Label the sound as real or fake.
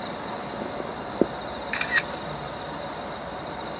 real